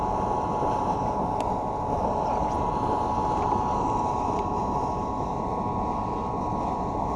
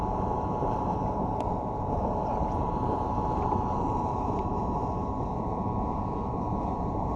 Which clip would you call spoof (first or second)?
second